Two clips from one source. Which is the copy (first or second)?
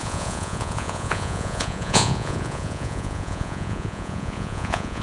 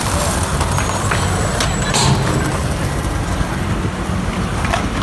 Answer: first